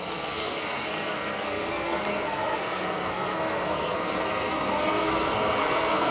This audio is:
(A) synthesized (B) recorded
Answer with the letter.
A